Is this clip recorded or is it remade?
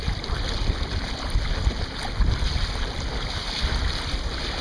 recorded